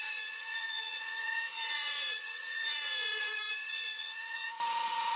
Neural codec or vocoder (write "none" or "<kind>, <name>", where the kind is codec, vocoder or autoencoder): vocoder, Vocos